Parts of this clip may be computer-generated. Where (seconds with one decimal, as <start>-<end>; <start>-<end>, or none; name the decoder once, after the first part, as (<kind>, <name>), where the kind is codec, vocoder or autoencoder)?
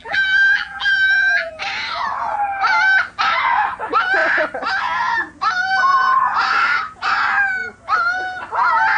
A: 0.0-1.5 (vocoder, BigVGAN v2)